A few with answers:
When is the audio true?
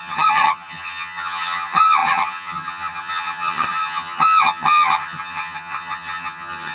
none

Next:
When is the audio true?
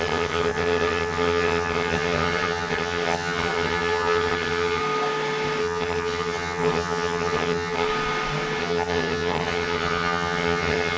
4.8-5.6; 7.9-8.6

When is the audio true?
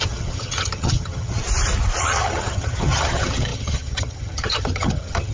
1.4-2.0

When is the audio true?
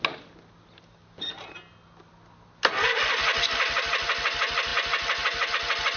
0.0-6.0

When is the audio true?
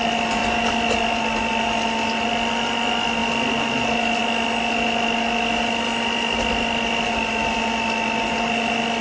0.0-9.0